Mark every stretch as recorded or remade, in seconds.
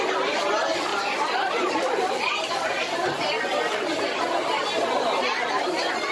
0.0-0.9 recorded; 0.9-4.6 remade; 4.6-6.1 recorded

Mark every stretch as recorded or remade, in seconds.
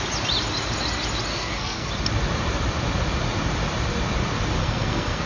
0.0-1.3 recorded; 1.3-1.9 remade; 1.9-4.6 recorded; 4.6-5.3 remade